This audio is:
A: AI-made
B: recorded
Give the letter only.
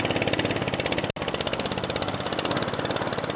B